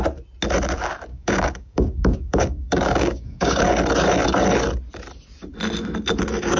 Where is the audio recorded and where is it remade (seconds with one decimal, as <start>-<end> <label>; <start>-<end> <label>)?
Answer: 0.0-1.1 recorded; 1.1-3.6 remade; 3.6-6.6 recorded

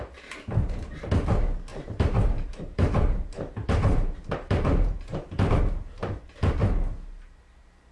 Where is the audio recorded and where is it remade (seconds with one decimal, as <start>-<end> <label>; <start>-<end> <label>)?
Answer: 0.0-1.7 recorded; 1.7-5.5 remade; 5.5-7.9 recorded

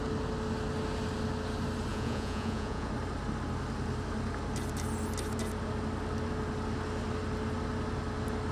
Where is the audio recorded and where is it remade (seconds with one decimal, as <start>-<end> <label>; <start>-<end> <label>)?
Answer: 0.0-1.9 recorded; 1.9-2.9 remade; 2.9-8.5 recorded

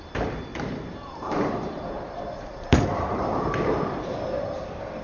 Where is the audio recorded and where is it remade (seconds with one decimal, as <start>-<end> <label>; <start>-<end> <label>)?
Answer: 0.0-0.5 recorded; 0.5-3.5 remade; 3.5-5.0 recorded